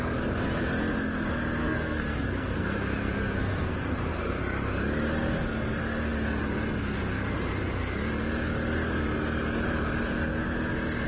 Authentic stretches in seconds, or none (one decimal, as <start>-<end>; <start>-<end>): 0.0-1.6; 4.4-11.1